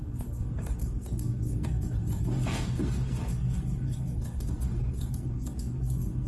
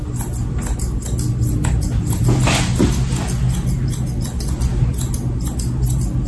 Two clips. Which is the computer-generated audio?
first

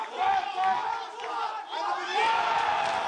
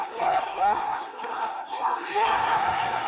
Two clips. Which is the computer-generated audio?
second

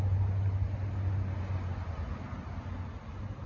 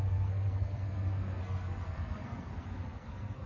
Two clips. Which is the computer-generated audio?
second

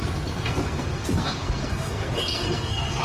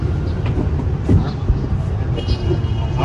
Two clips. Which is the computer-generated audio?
first